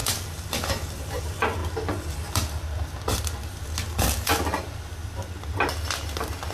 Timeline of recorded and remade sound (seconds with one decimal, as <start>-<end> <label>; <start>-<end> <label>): 0.0-6.5 recorded